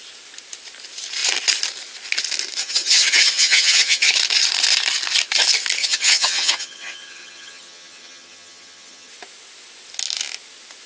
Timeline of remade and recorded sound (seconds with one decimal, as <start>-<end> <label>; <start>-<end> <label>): 0.0-2.6 recorded; 2.6-4.1 remade; 4.1-5.8 recorded; 5.8-9.1 remade; 9.1-10.9 recorded